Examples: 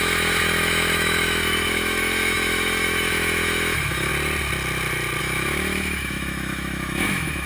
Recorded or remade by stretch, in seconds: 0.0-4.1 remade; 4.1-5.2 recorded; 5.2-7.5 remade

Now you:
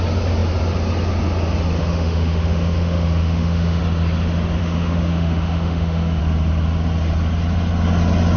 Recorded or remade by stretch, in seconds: 0.0-1.8 recorded; 1.8-3.8 remade; 3.8-4.6 recorded; 4.6-6.2 remade; 6.2-8.4 recorded

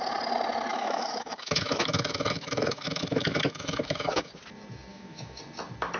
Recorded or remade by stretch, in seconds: 0.0-0.7 recorded; 0.7-4.3 remade; 4.3-4.9 recorded; 4.9-5.4 remade; 5.4-6.0 recorded

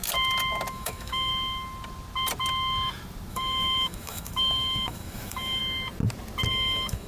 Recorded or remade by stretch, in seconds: 0.0-0.7 recorded; 0.7-1.3 remade; 1.3-3.3 recorded; 3.3-5.6 remade; 5.6-6.5 recorded; 6.5-7.1 remade